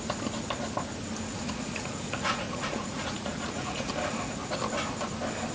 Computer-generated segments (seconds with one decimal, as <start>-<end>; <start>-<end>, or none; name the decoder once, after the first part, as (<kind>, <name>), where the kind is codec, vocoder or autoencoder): 1.3-3.9 (vocoder, Vocos)